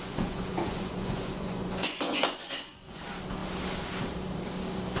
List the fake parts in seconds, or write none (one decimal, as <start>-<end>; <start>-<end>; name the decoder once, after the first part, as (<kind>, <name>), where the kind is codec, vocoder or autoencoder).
0.0-3.0 (vocoder, Vocos)